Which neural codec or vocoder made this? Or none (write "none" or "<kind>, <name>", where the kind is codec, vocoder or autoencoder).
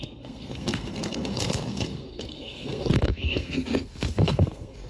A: codec, SNAC